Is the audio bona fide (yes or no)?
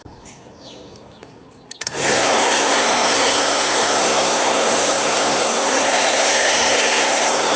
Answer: no